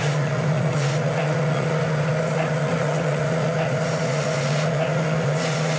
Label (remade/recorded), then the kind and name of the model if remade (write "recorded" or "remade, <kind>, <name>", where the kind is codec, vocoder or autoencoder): remade, vocoder, Vocos